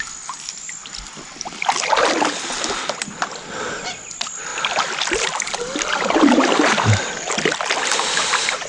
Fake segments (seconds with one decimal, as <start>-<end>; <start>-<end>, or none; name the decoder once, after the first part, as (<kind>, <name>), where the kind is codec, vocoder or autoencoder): 4.5-7.7 (vocoder, BigVGAN v2)